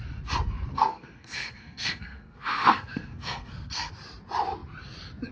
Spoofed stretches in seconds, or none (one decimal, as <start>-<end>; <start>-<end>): 0.7-3.9